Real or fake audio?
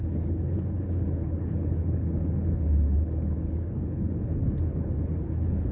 fake